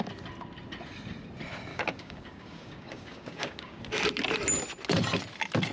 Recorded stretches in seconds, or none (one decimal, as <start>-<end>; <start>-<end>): 0.0-1.7; 3.8-5.7